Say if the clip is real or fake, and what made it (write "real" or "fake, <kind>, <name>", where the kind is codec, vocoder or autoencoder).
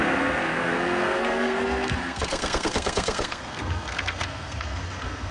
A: fake, codec, SNAC